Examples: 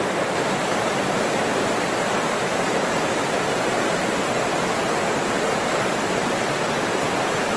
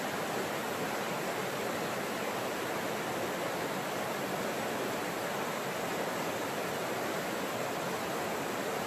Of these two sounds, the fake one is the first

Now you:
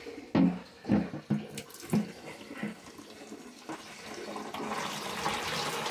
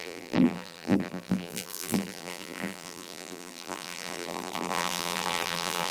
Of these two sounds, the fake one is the second